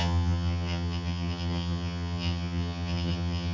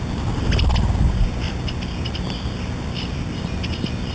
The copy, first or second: first